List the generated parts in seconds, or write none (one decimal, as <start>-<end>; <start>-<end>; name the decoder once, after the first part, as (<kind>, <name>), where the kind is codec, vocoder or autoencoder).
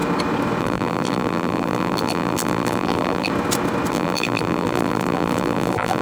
0.6-3.3 (vocoder, BigVGAN v2); 3.9-6.0